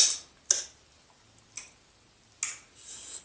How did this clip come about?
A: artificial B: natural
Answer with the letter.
B